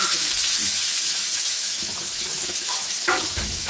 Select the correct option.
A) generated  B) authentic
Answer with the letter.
A